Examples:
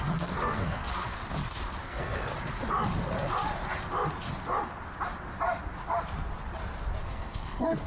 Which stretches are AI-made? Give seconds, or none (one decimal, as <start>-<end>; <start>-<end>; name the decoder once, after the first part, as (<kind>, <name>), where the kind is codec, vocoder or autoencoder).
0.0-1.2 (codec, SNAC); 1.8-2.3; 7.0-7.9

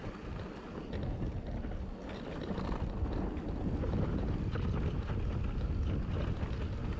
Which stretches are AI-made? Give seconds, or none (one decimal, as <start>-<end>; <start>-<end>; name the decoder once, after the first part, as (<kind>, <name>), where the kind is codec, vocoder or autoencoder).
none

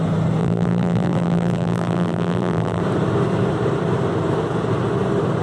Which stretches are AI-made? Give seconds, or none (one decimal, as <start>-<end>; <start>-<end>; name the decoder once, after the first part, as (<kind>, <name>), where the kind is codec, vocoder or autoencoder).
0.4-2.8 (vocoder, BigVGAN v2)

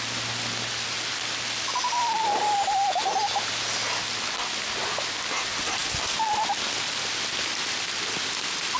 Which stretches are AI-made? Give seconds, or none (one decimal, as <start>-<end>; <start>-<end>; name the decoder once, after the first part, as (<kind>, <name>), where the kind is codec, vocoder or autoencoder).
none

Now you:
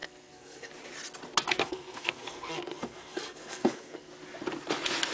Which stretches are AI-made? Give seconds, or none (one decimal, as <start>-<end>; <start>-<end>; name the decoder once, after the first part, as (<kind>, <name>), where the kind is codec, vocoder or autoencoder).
0.0-0.7 (codec, SNAC); 1.5-4.1

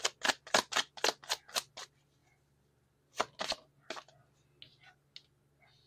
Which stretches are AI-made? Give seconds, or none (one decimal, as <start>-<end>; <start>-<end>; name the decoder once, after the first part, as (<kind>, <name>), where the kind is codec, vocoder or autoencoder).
none